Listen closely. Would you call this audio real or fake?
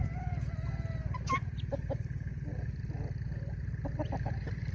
real